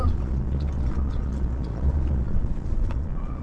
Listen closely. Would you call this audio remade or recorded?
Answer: remade